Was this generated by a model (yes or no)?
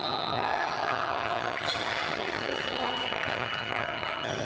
yes